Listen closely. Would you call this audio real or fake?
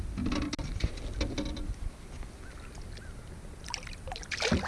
real